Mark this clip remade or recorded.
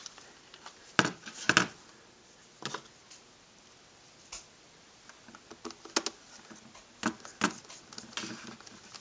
recorded